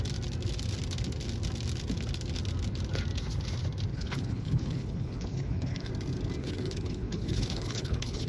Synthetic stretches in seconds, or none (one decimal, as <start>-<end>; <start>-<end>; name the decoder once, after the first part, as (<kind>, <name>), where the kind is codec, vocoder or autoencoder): 3.9-5.9 (codec, HILCodec); 6.4-8.3